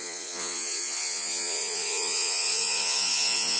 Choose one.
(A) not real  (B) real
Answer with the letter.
A